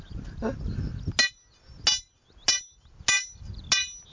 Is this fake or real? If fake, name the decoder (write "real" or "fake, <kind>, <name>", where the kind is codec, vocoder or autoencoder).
real